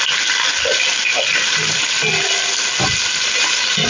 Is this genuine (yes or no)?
yes